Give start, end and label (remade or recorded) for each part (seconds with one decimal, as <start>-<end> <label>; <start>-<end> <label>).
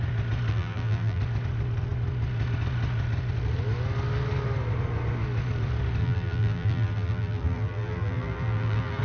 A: 0.0-0.5 recorded; 0.5-1.2 remade; 1.2-6.0 recorded; 6.0-9.0 remade